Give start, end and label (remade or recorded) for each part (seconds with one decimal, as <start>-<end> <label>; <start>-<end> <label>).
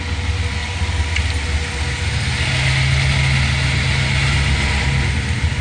0.0-5.6 recorded